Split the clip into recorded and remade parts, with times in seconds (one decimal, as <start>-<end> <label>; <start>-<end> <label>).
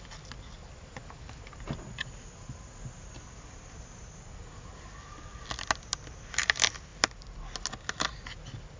0.0-8.8 recorded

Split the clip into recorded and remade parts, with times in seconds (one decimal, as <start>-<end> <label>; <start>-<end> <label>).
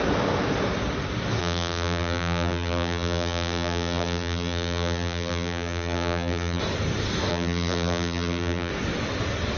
0.0-1.4 recorded; 1.4-6.6 remade; 6.6-7.3 recorded; 7.3-8.7 remade; 8.7-9.6 recorded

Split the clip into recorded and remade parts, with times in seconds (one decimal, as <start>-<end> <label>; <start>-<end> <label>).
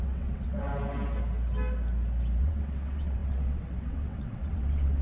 0.0-0.7 remade; 0.7-2.4 recorded; 2.4-5.0 remade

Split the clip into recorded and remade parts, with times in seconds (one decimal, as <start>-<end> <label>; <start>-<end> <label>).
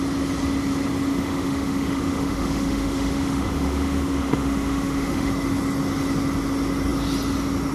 0.0-1.1 recorded; 1.1-5.3 remade; 5.3-7.7 recorded